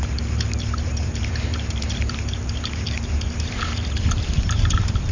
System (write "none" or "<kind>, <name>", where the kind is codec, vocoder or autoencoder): vocoder, BigVGAN v2